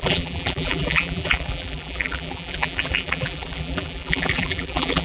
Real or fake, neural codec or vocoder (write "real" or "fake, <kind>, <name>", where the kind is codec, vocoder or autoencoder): fake, vocoder, BigVGAN v2